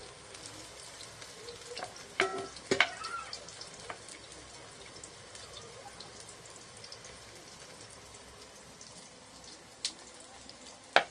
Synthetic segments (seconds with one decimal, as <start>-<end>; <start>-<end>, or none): none